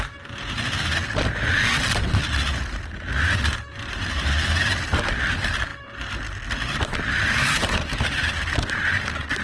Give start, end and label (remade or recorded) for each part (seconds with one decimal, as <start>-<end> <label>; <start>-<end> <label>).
0.0-5.7 recorded; 5.7-8.3 remade; 8.3-9.4 recorded